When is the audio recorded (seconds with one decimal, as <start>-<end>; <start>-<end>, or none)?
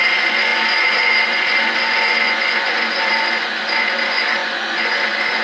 none